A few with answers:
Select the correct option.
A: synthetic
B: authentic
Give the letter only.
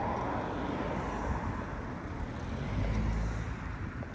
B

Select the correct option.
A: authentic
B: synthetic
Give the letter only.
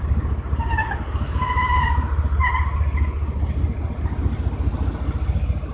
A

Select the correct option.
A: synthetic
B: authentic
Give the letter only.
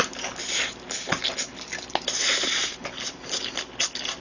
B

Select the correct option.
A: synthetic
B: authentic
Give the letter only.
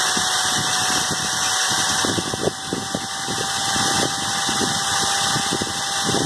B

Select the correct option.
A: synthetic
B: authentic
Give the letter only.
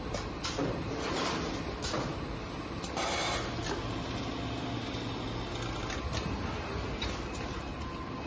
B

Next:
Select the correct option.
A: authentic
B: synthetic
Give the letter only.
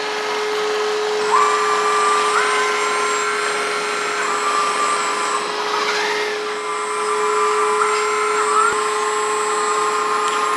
A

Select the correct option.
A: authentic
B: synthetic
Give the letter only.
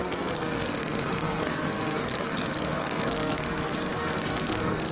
B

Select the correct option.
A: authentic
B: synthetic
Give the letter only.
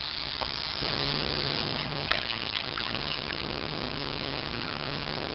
B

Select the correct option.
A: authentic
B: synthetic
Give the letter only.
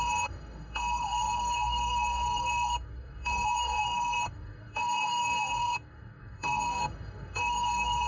B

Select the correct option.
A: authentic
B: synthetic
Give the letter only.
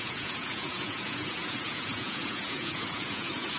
B